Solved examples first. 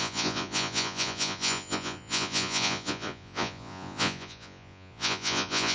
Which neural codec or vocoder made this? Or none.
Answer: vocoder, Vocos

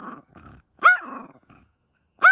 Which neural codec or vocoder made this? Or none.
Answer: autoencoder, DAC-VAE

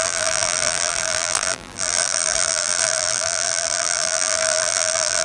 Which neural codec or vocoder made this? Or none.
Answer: vocoder, BigVGAN v2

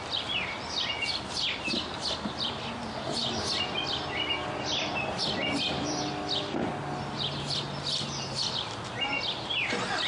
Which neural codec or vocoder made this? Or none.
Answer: none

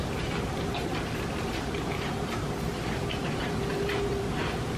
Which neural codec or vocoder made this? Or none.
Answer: vocoder, BigVGAN v2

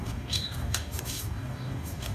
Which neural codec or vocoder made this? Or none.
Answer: codec, DAC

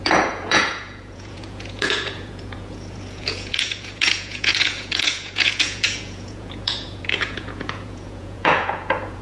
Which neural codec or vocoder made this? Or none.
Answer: vocoder, Vocos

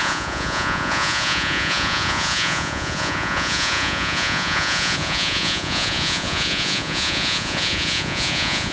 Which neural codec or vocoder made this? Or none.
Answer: vocoder, Vocos